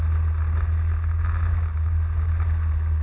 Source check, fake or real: real